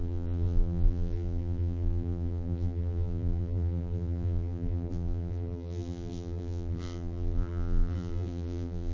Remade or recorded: remade